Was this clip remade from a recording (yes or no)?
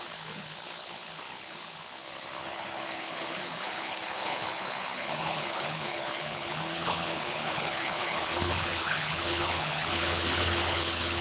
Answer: yes